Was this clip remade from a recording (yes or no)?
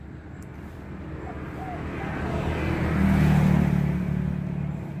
no